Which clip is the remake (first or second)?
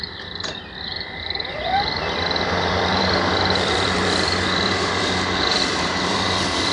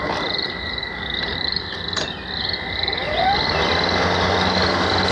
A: first